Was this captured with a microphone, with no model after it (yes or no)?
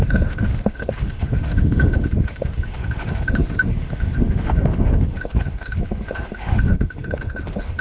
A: no